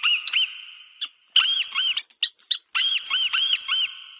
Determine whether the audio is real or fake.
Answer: fake